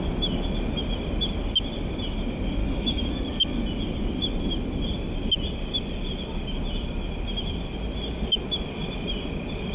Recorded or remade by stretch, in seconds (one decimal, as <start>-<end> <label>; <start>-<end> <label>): 0.0-2.6 recorded; 2.6-3.1 remade; 3.1-9.7 recorded